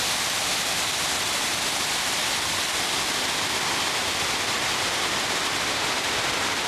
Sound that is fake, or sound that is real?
real